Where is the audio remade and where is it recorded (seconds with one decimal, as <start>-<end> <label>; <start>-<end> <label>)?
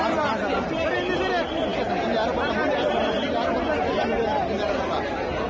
0.0-5.5 recorded